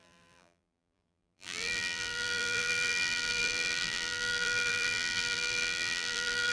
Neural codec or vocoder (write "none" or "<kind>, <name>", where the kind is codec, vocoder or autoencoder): vocoder, BigVGAN v2